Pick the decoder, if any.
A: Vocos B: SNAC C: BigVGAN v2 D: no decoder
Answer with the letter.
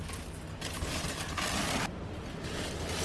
D